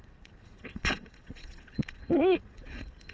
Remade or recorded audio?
remade